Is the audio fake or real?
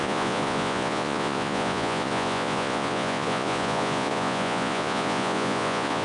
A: fake